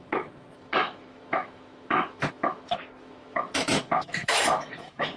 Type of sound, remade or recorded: remade